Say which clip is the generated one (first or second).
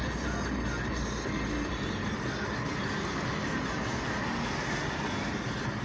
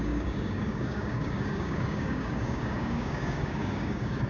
second